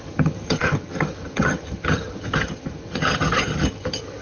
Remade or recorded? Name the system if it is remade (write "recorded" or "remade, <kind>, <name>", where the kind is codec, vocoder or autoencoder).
remade, vocoder, HiFi-GAN